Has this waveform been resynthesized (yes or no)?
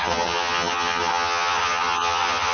yes